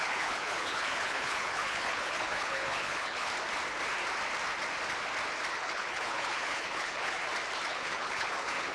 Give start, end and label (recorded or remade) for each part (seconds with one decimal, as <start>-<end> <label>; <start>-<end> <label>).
0.0-3.3 remade; 3.3-5.5 recorded; 5.5-7.2 remade; 7.2-7.7 recorded; 7.7-8.7 remade